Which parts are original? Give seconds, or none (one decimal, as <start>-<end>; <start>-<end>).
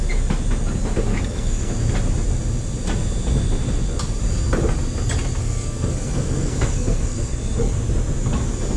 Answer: 0.0-1.1; 1.7-5.4; 7.7-8.8